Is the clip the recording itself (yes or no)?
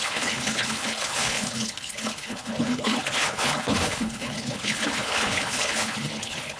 no